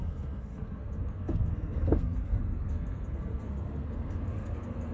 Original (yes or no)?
no